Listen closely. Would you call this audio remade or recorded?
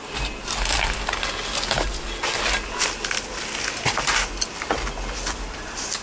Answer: recorded